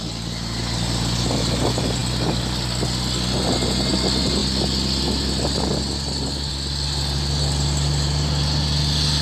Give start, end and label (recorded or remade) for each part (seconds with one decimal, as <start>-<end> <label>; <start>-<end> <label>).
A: 0.0-9.2 recorded